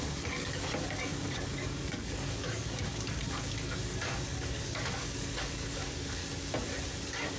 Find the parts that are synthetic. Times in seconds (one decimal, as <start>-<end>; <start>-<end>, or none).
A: 0.0-6.2; 6.9-7.4